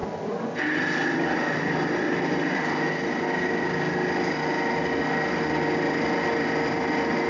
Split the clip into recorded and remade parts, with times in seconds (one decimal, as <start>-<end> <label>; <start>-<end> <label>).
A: 0.0-2.6 remade; 2.6-7.3 recorded